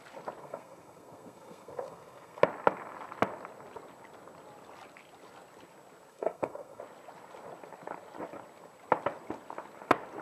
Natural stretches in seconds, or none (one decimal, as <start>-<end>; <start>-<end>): 0.0-0.4; 2.4-6.1; 6.8-10.2